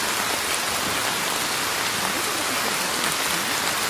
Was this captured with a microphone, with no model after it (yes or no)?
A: yes